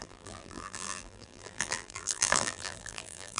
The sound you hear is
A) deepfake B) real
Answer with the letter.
A